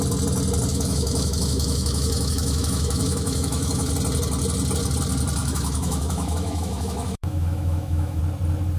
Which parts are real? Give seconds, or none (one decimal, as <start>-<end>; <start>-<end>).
0.0-0.7; 3.9-5.4; 8.2-8.8